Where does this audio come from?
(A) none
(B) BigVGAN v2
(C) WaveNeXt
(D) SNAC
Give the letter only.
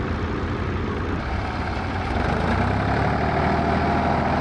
A